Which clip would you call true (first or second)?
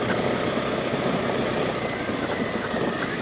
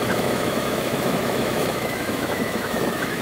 first